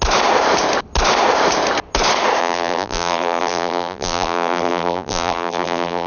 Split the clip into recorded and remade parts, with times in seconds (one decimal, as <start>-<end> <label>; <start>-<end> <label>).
0.0-2.4 recorded; 2.4-6.1 remade